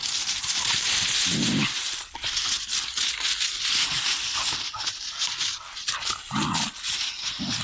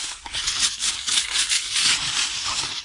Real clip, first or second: first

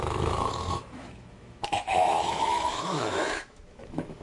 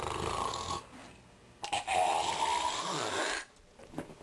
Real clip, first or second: second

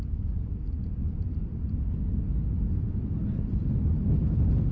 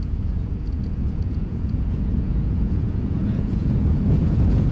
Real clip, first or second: first